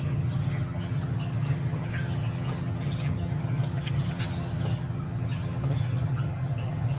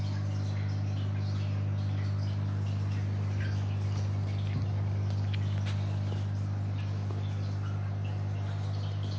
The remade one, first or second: first